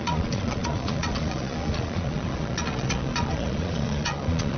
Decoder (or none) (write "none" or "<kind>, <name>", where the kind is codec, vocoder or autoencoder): vocoder, Vocos